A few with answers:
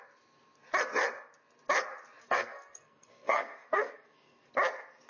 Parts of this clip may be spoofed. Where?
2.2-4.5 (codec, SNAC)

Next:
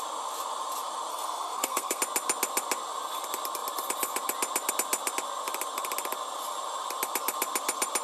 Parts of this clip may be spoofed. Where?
1.1-2.0 (codec, SNAC)

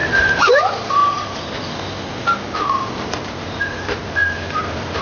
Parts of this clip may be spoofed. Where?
0.0-1.0 (vocoder, BigVGAN v2); 3.0-5.0

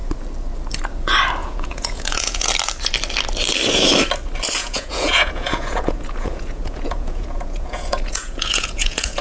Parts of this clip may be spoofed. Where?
1.4-2.5 (vocoder, Vocos); 4.6-9.2

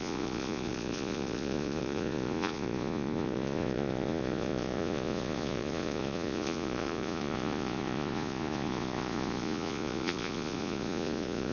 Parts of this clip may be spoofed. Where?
0.0-11.5 (vocoder, Vocos)